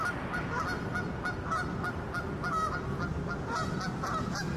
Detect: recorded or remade recorded